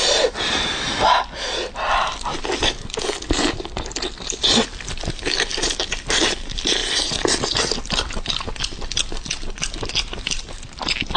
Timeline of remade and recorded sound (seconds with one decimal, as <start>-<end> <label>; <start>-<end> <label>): 0.0-11.2 recorded